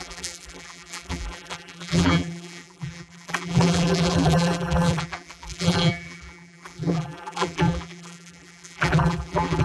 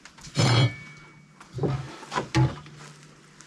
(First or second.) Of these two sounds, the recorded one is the second